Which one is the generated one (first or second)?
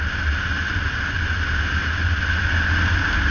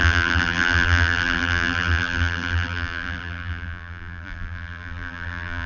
second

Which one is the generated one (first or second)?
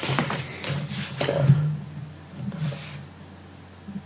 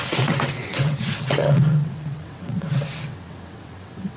second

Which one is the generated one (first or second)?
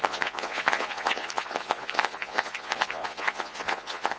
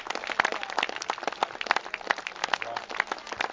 first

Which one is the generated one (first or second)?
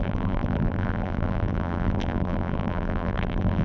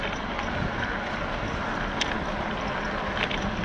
first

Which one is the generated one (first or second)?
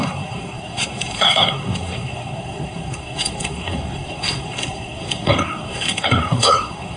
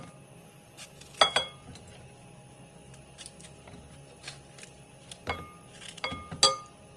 first